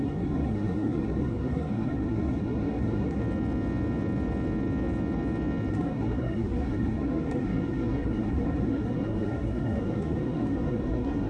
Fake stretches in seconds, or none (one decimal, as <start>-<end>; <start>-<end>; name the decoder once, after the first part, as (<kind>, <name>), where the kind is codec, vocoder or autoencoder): 0.0-3.2 (codec, SNAC); 5.7-11.3